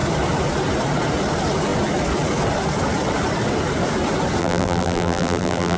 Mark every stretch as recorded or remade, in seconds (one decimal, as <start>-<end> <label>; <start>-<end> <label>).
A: 0.0-4.4 recorded; 4.4-5.8 remade